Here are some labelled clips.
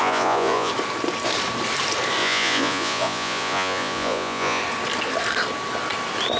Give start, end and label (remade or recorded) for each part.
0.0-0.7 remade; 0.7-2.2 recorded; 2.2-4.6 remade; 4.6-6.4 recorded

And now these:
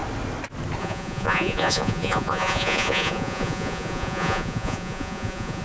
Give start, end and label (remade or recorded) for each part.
0.0-0.8 recorded; 0.8-5.6 remade

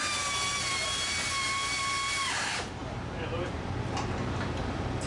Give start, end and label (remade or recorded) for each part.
0.0-2.8 recorded; 2.8-5.1 remade

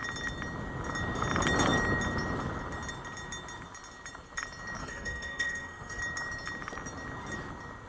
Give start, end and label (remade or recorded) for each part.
0.0-4.8 recorded; 4.8-6.0 remade; 6.0-7.9 recorded

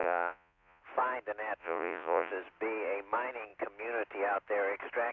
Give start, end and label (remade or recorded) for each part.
0.0-0.8 remade; 0.8-1.6 recorded; 1.6-2.3 remade; 2.3-5.1 recorded

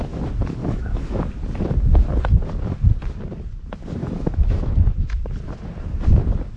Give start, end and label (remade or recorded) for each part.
0.0-0.6 recorded; 0.6-1.2 remade; 1.2-4.0 recorded; 4.0-4.7 remade; 4.7-6.6 recorded

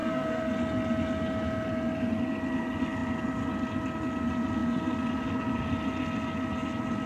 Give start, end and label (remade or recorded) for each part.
0.0-0.5 remade; 0.5-7.1 recorded

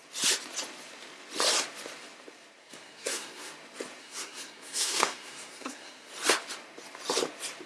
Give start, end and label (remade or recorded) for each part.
0.0-2.6 recorded; 2.6-3.5 remade; 3.5-4.0 recorded; 4.0-6.1 remade; 6.1-7.7 recorded